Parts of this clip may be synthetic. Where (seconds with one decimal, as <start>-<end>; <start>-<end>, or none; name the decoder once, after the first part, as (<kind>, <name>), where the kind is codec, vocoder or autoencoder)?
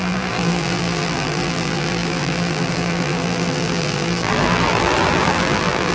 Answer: 0.0-5.9 (vocoder, BigVGAN v2)